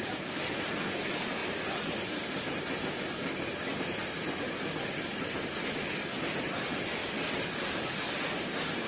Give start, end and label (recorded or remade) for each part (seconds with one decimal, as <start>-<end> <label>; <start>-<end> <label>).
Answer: 0.0-8.9 recorded

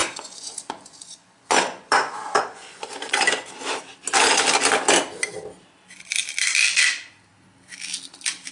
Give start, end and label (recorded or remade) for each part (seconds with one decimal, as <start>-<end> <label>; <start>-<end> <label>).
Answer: 0.0-3.5 remade; 3.5-8.5 recorded

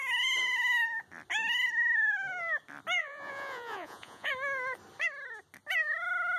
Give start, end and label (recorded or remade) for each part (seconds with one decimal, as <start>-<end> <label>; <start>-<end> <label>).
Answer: 0.0-3.0 recorded; 3.0-4.3 remade; 4.3-6.4 recorded

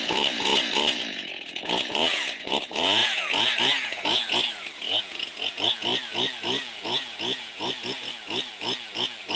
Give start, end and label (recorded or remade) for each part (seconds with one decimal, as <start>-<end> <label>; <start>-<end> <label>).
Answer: 0.0-9.4 remade

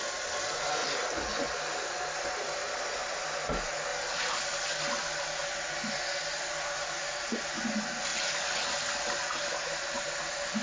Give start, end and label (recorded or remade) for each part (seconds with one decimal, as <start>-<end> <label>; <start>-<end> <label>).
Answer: 0.0-10.6 recorded

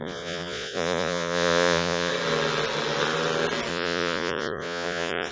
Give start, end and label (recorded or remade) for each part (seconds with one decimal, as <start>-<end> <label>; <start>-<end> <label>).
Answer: 0.0-2.1 remade; 2.1-3.7 recorded; 3.7-5.3 remade

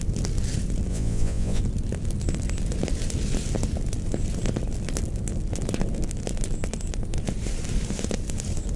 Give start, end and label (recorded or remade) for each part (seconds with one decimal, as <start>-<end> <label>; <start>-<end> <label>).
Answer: 0.0-0.9 recorded; 0.9-1.6 remade; 1.6-8.8 recorded